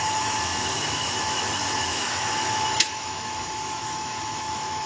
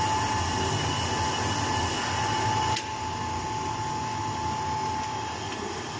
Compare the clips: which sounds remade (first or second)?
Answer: first